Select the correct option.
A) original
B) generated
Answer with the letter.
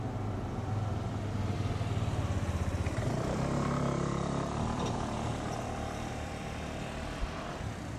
B